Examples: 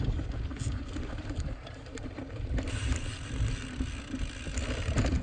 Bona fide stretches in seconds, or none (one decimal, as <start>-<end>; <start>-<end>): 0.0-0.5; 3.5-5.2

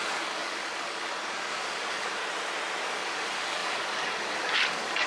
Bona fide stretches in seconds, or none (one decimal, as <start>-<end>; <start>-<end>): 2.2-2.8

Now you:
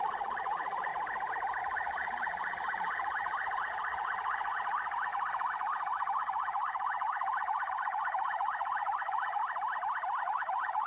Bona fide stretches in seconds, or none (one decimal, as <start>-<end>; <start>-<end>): 0.9-1.6; 9.4-10.2

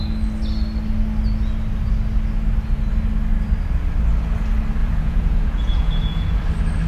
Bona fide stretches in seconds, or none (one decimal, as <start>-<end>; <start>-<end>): 0.0-4.8; 6.3-6.9

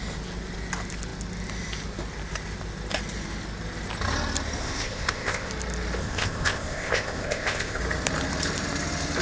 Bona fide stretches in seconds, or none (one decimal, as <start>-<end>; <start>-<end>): 0.0-4.6; 5.5-6.0; 7.8-9.2

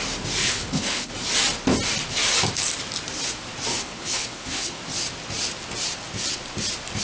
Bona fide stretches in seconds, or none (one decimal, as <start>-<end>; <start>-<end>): 0.0-0.4; 1.1-3.7; 4.8-7.0